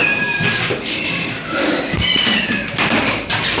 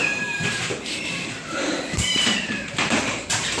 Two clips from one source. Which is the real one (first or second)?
first